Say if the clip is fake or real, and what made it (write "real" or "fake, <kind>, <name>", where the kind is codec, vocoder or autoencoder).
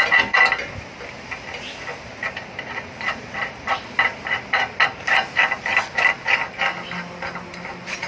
real